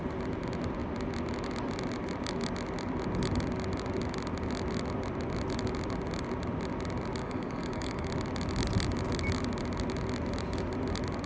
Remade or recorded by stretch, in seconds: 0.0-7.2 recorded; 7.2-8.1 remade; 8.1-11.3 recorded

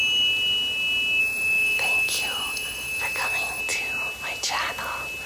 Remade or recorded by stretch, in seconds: 0.0-1.2 recorded; 1.2-3.6 remade; 3.6-5.3 recorded